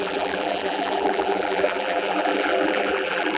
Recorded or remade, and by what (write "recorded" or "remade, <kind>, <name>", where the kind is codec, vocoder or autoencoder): remade, vocoder, BigVGAN v2